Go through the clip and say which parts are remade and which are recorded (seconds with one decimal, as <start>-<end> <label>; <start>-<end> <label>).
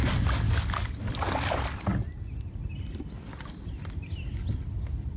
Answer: 0.0-5.2 recorded